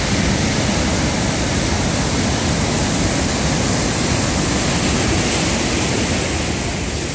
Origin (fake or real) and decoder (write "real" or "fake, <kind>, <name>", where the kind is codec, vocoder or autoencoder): real